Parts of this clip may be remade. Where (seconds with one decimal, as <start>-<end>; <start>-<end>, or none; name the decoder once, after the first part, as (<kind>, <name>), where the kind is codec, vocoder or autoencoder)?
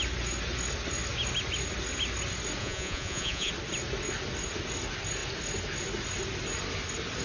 2.6-3.5 (vocoder, Vocos)